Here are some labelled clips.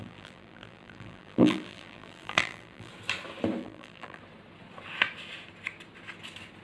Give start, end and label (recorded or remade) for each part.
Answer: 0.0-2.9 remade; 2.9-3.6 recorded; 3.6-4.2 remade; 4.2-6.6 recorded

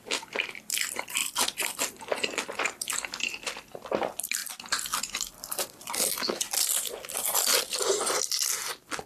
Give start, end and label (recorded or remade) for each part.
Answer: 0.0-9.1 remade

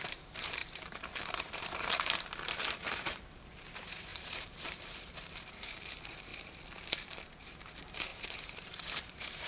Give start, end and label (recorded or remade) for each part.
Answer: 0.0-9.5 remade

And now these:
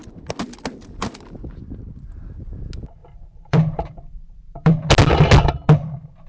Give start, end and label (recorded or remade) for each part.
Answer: 0.0-3.0 recorded; 3.0-4.9 remade; 4.9-6.3 recorded

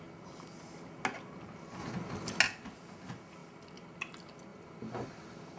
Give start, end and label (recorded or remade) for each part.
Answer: 0.0-1.8 recorded; 1.8-2.4 remade; 2.4-4.5 recorded; 4.5-5.6 remade

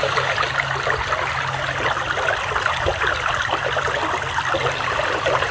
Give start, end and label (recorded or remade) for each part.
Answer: 0.0-5.5 recorded

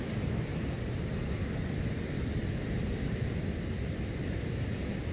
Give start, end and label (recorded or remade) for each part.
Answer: 0.0-0.5 recorded; 0.5-3.6 remade; 3.6-5.1 recorded

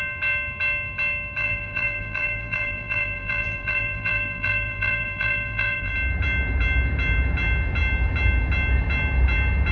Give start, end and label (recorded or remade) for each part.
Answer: 0.0-1.4 recorded; 1.4-5.9 remade; 5.9-9.7 recorded